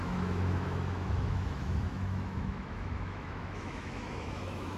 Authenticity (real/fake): fake